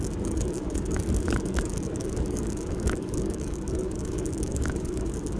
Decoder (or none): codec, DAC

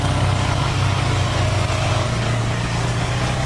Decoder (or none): codec, DAC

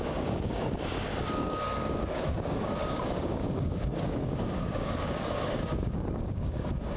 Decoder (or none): codec, DAC